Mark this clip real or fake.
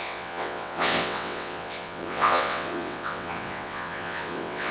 fake